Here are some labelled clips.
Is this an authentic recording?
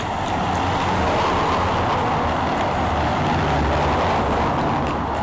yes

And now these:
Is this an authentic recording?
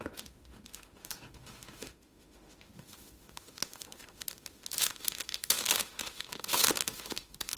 no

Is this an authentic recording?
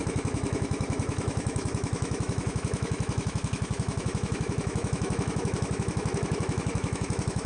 no